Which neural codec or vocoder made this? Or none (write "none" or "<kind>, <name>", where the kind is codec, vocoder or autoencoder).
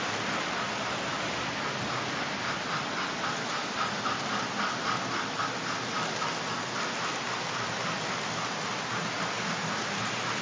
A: none